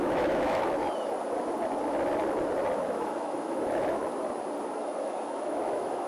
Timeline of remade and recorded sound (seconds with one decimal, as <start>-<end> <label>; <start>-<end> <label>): 0.0-0.8 remade; 0.8-2.8 recorded; 2.8-4.0 remade; 4.0-4.8 recorded; 4.8-6.1 remade